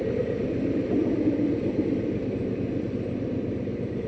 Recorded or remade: recorded